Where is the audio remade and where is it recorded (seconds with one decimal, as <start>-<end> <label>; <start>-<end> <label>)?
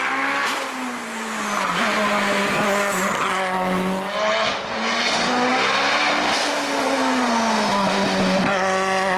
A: 0.0-9.2 recorded